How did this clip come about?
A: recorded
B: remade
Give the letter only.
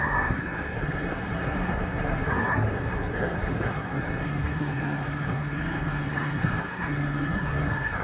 B